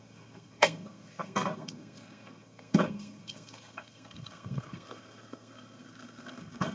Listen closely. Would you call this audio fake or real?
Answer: fake